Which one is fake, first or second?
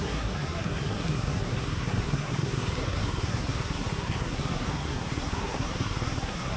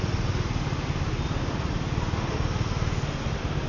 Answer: first